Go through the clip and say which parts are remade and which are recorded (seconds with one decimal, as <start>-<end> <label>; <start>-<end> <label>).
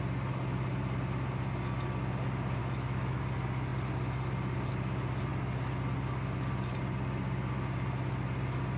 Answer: 0.0-2.6 recorded; 2.6-3.2 remade; 3.2-8.8 recorded